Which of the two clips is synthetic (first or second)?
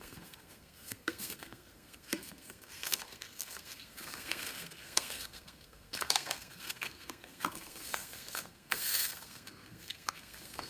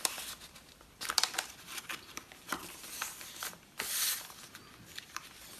first